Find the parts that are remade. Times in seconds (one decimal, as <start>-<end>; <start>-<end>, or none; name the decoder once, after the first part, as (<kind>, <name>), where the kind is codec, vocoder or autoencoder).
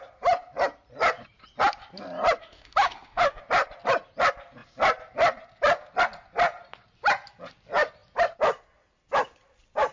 2.4-3.4 (autoencoder, DAC-VAE)